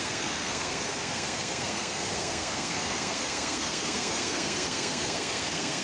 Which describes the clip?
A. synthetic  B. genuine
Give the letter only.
A